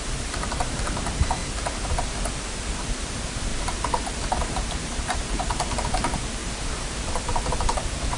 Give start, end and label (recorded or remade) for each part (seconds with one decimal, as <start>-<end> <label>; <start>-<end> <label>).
0.0-1.4 remade; 1.4-2.8 recorded; 2.8-3.5 remade; 3.5-4.4 recorded; 4.4-6.4 remade; 6.4-7.5 recorded; 7.5-8.2 remade